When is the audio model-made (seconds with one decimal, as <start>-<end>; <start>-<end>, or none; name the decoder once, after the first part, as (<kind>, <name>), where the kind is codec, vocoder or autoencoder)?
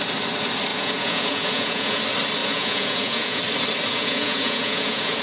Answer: 0.7-2.0 (vocoder, Vocos); 2.4-3.4; 3.9-5.2